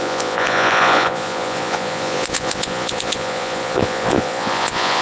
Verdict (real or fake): fake